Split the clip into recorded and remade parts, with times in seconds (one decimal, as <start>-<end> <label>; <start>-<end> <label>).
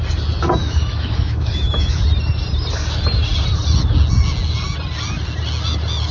0.0-0.6 recorded; 0.6-2.0 remade; 2.0-6.1 recorded